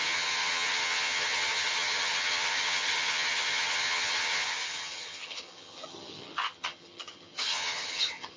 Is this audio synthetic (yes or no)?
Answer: yes